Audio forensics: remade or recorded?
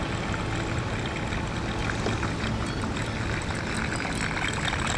recorded